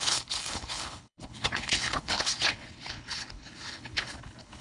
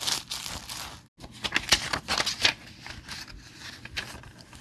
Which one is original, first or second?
second